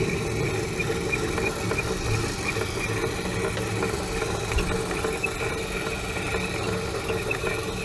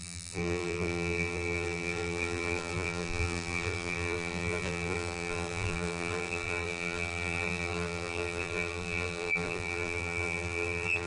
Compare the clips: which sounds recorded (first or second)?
first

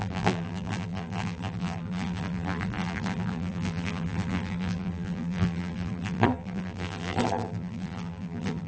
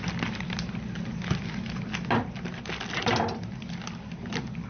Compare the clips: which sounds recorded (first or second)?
second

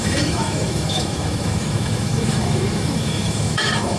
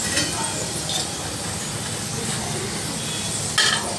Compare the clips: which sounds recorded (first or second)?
second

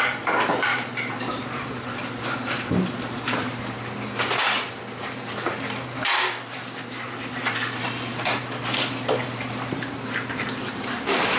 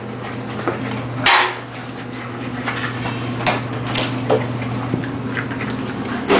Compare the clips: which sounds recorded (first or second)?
second